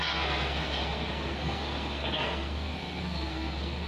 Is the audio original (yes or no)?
no